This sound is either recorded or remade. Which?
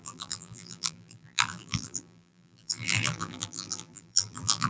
remade